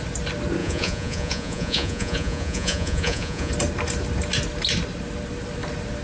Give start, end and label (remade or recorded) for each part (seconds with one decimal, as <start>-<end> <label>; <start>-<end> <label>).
0.0-0.6 recorded; 0.6-3.5 remade; 3.5-6.0 recorded